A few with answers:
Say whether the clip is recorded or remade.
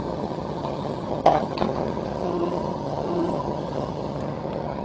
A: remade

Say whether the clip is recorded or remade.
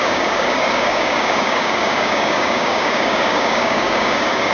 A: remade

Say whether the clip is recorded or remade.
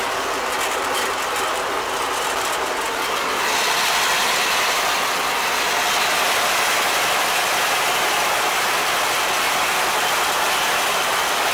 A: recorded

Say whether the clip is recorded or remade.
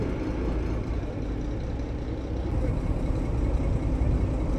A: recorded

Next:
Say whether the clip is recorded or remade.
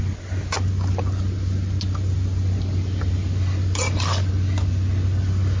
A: recorded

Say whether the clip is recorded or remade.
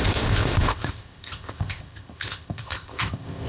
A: remade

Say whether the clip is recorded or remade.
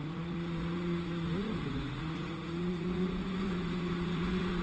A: remade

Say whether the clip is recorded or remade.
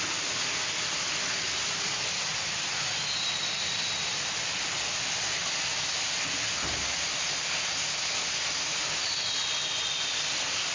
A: recorded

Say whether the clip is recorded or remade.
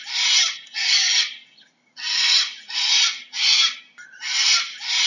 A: recorded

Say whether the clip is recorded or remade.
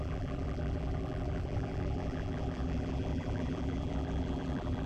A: remade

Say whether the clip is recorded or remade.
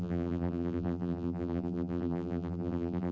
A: remade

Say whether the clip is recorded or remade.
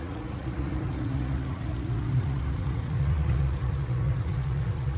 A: remade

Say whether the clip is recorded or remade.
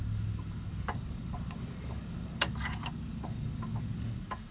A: remade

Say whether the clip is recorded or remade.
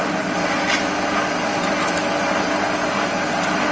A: recorded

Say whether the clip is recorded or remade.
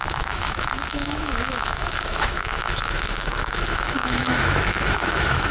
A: remade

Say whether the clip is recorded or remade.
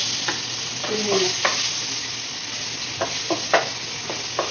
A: recorded